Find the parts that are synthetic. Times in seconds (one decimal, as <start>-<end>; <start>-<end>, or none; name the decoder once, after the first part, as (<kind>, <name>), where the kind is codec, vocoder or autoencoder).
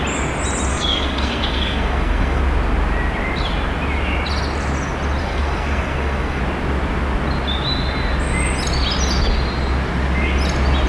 0.7-2.4 (codec, SNAC); 5.2-6.4